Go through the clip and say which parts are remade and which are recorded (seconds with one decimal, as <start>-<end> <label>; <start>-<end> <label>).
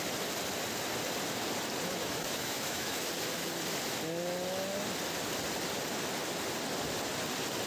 0.0-2.0 recorded; 2.0-3.1 remade; 3.1-7.7 recorded